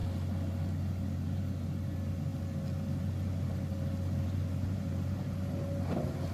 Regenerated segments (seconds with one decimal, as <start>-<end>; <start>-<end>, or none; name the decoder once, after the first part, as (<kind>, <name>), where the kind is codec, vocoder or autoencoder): none